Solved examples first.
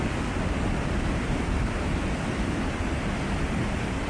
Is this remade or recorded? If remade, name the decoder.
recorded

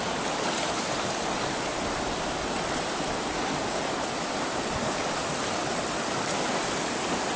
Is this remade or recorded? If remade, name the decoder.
recorded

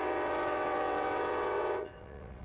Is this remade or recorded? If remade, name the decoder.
remade, vocoder, WaveNeXt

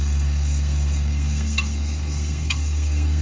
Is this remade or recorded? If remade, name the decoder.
remade, codec, SNAC